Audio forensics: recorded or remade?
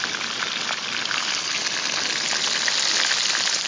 recorded